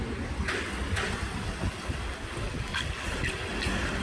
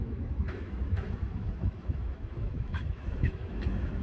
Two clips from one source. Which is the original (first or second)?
first